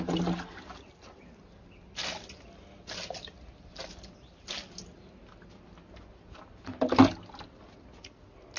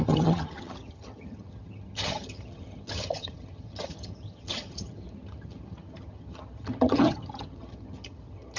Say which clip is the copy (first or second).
second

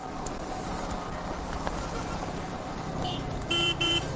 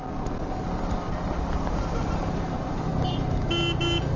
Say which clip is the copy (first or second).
first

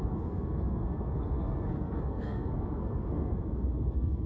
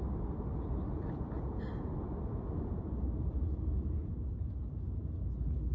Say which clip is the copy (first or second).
first